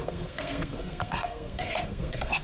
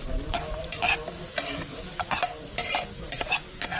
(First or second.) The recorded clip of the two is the second